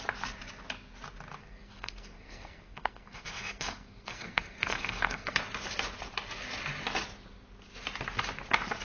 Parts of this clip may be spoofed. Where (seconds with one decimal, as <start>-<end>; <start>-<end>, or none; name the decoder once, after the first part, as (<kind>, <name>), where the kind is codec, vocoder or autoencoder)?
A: 1.4-5.4 (codec, SNAC)